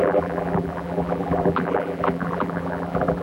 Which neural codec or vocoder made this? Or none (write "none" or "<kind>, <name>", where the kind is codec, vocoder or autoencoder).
vocoder, BigVGAN v2